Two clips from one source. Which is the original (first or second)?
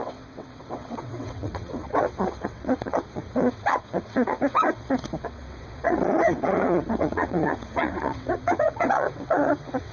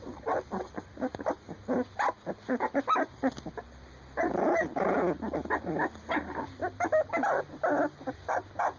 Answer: second